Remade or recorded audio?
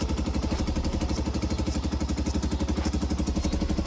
recorded